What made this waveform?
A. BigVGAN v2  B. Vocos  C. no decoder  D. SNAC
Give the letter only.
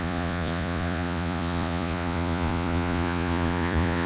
B